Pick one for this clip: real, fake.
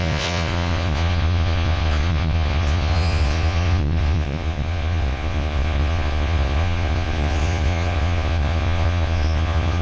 fake